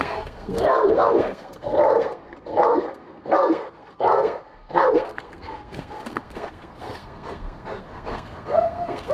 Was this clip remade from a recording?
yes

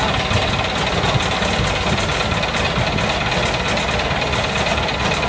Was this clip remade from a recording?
no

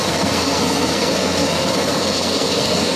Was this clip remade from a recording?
yes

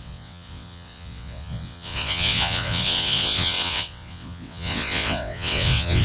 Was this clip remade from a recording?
yes